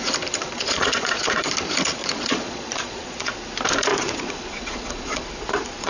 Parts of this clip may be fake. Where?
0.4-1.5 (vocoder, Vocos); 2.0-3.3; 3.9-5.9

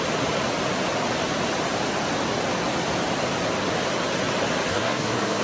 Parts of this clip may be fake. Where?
4.7-5.4 (codec, SNAC)